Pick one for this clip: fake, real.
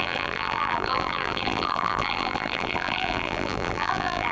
fake